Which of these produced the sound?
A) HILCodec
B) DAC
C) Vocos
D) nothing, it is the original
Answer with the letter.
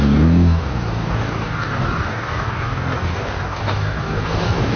B